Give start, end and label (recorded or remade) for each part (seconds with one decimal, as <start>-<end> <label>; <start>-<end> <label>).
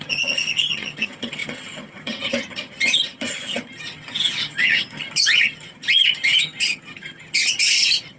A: 0.0-8.2 remade